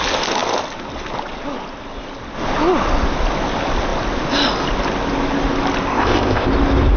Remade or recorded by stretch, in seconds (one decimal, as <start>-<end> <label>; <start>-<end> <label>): 0.0-5.9 recorded; 5.9-6.5 remade; 6.5-7.0 recorded